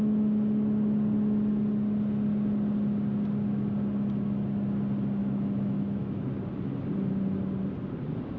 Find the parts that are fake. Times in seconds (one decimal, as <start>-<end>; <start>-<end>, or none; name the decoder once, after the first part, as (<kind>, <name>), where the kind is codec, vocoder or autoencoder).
5.2-6.3 (autoencoder, DAC-VAE)